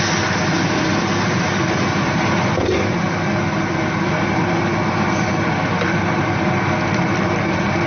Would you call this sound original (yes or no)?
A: yes